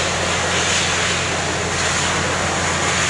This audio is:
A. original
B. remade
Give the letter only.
A